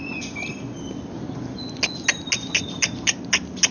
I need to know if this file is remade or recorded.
recorded